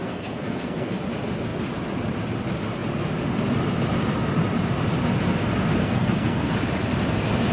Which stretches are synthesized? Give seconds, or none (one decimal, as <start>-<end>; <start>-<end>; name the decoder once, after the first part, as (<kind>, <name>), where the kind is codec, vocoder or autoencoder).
0.0-1.0 (codec, SNAC); 5.8-6.5